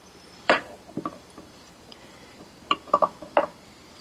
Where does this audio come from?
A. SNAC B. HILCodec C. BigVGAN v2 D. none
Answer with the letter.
C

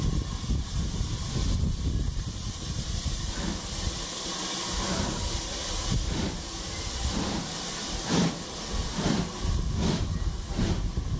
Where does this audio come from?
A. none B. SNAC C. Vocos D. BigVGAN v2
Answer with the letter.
D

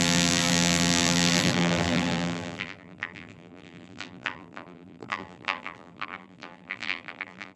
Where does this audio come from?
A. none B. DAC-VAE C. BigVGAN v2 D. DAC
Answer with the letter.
C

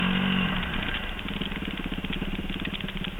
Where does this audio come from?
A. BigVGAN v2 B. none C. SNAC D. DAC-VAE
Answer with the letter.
B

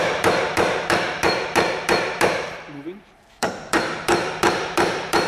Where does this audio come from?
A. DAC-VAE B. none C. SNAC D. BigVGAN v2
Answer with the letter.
D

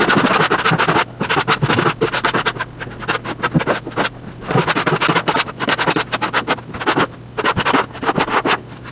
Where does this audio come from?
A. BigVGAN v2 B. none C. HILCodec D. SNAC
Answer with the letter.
B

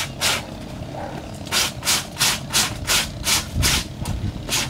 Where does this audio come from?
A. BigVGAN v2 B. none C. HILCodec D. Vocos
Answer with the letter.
B